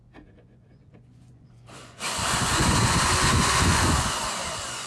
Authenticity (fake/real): fake